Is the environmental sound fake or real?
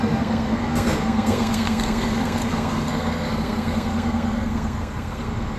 fake